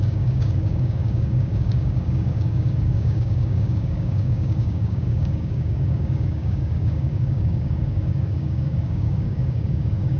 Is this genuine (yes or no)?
no